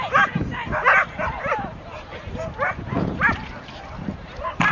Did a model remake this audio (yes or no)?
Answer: no